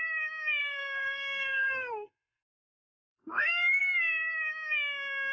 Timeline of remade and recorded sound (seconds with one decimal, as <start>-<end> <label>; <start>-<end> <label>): 0.0-0.6 recorded; 0.6-3.8 remade; 3.8-5.3 recorded